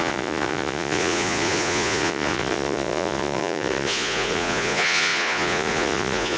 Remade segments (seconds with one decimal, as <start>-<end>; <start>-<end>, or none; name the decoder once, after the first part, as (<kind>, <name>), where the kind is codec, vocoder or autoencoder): 0.0-6.4 (vocoder, Vocos)